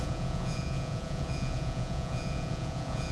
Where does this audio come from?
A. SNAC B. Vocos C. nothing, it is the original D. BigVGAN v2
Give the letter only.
B